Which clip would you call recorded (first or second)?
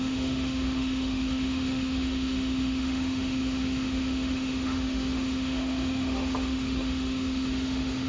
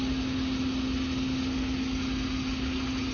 second